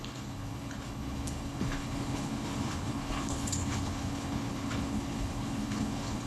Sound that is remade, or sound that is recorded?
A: remade